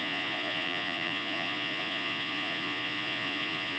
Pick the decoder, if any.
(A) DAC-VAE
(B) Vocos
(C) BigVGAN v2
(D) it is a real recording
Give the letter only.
B